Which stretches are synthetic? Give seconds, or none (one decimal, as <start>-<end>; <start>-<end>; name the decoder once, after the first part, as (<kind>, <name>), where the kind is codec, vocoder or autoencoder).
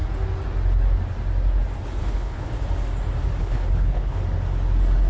2.0-2.6 (codec, HILCodec); 3.4-4.2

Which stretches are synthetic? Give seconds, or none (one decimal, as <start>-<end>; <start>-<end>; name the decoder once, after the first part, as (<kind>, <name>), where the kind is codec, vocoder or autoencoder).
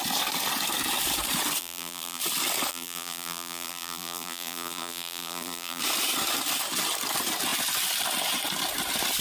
1.6-2.2 (vocoder, BigVGAN v2); 2.7-5.8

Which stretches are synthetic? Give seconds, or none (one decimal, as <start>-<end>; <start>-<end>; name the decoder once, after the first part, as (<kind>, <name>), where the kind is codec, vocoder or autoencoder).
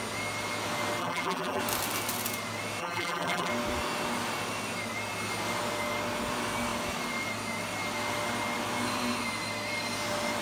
1.0-1.6 (vocoder, BigVGAN v2); 2.8-3.5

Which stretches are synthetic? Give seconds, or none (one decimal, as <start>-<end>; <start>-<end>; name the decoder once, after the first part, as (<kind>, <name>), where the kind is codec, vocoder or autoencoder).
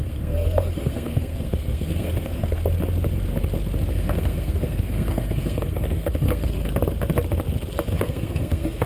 0.0-2.6 (codec, SNAC); 3.9-6.6; 7.9-8.9